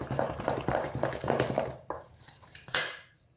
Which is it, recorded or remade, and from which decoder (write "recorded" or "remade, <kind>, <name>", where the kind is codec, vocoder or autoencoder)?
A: remade, vocoder, BigVGAN v2